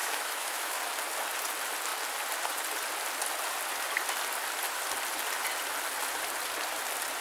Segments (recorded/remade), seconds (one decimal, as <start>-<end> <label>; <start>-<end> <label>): 0.0-0.8 remade; 0.8-7.2 recorded